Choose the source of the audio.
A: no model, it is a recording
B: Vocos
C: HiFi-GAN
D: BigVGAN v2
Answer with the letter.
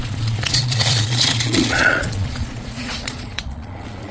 B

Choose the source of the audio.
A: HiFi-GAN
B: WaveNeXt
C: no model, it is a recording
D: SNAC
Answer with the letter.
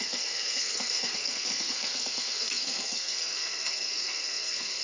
D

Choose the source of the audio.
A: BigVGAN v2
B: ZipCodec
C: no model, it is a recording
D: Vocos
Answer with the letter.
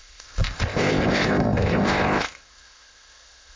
B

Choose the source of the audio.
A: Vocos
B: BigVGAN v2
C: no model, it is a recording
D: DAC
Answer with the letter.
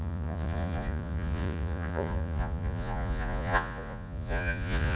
A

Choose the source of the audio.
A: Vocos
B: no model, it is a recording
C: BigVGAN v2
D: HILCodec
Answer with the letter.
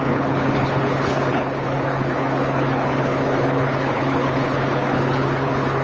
D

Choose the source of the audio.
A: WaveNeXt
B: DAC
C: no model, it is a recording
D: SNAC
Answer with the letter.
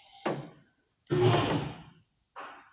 C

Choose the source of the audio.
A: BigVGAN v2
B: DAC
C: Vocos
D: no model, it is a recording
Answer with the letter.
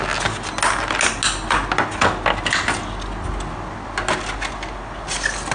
D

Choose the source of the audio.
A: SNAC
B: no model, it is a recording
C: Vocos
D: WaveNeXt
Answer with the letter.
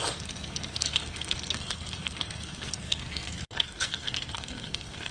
A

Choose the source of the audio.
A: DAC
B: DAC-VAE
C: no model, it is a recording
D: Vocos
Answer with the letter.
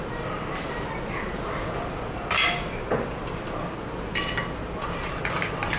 C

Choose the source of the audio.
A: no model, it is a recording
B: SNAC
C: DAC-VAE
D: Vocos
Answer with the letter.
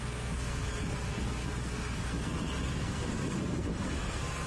B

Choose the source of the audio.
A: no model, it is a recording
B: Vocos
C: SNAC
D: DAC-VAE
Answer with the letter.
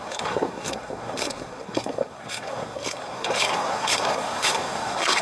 C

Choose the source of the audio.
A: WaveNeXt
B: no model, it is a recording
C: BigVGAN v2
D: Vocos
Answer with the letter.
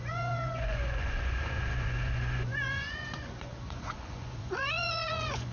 D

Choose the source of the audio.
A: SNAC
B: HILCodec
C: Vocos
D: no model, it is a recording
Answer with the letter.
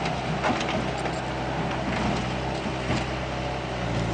D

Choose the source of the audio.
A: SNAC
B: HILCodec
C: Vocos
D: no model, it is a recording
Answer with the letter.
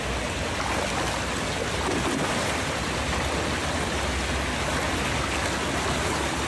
D